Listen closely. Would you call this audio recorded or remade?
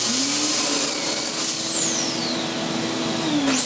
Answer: recorded